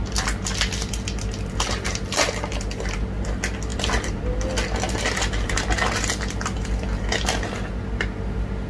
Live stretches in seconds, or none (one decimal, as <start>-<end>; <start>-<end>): 0.0-8.7

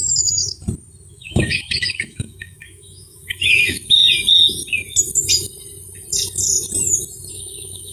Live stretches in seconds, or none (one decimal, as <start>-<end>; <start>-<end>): 0.4-1.1; 4.0-7.3

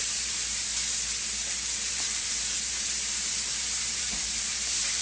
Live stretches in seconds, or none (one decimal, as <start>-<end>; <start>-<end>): 0.6-1.9

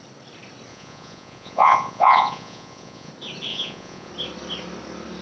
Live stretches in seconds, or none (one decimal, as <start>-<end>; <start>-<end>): 0.0-0.7; 3.1-3.5; 4.1-5.2

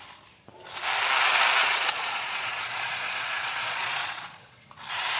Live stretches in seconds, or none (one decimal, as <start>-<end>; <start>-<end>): 0.0-1.6; 4.7-5.2

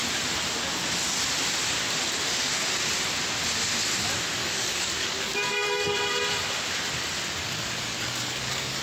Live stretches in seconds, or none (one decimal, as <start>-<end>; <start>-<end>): 0.0-4.4; 5.9-7.4